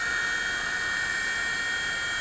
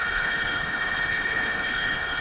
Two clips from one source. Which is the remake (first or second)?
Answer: second